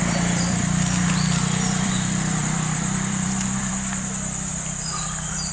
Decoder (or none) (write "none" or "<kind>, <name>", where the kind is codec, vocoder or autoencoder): vocoder, BigVGAN v2